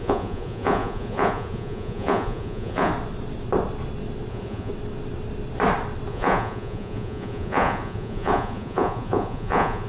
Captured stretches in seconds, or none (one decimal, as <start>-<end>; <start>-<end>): 2.9-4.3; 4.7-6.1